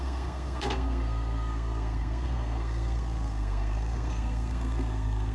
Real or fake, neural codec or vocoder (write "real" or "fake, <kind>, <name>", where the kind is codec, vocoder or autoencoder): fake, codec, SNAC